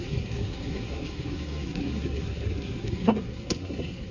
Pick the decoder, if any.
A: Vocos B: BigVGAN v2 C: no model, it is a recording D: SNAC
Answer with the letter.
D